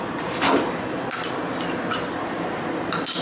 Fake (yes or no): no